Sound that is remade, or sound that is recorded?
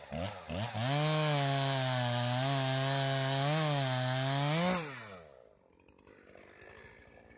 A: recorded